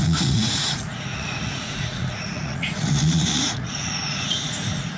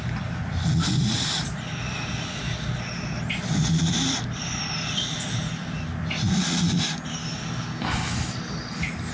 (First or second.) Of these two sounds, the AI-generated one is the first